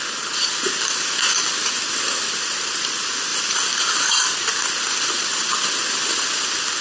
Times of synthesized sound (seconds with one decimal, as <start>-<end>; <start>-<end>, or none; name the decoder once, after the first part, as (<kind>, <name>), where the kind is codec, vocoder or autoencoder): none